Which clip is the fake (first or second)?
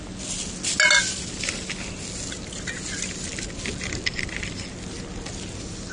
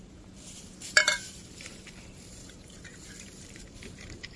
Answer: second